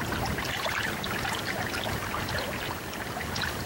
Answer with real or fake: real